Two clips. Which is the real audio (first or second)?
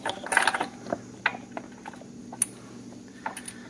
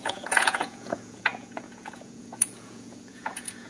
first